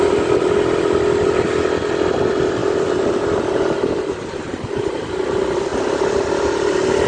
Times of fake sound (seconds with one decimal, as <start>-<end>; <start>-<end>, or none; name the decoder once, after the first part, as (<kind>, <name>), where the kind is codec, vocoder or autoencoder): 2.6-5.1 (vocoder, BigVGAN v2)